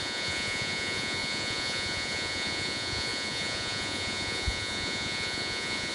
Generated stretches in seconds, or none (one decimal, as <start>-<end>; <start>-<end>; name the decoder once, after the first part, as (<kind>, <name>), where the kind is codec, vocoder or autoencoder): 0.0-5.9 (vocoder, Vocos)

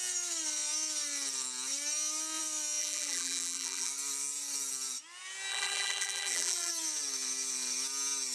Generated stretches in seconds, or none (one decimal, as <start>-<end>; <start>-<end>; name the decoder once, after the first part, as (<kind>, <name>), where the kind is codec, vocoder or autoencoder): 2.8-3.9 (vocoder, BigVGAN v2); 5.5-6.7

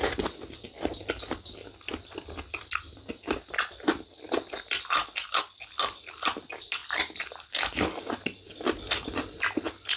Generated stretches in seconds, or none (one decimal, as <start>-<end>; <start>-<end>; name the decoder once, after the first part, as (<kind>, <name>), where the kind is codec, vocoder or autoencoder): none

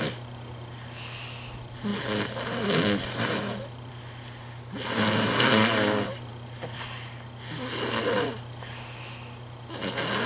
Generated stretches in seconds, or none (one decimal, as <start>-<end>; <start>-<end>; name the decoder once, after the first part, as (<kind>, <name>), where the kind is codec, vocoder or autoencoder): none

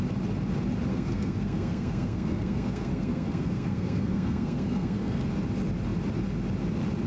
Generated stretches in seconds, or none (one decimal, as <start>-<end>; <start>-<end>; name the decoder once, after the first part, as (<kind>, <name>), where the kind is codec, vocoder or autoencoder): 0.9-5.2 (codec, SNAC)

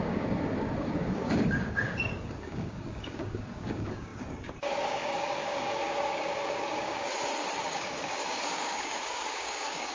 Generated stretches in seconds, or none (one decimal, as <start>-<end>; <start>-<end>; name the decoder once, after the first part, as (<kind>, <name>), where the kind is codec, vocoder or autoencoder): 0.0-7.1 (codec, DAC); 7.6-9.9